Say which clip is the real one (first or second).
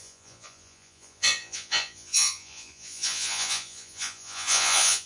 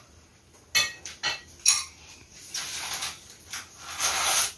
second